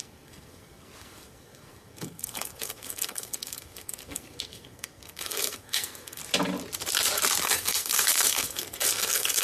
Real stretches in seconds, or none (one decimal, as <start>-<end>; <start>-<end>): 6.2-7.4